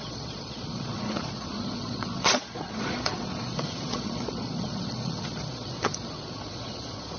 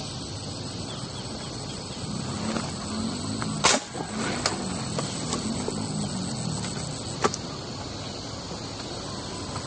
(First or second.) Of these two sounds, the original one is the second